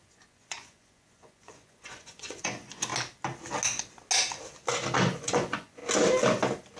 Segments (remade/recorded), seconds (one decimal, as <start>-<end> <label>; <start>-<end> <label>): 0.0-2.9 remade; 2.9-5.0 recorded; 5.0-5.8 remade; 5.8-6.8 recorded